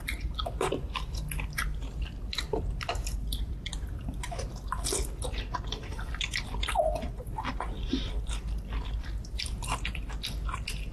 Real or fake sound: fake